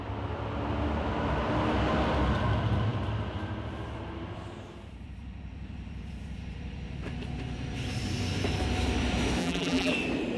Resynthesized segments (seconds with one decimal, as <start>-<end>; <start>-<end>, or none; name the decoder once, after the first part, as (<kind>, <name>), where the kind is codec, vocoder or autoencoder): 9.4-9.9 (vocoder, BigVGAN v2)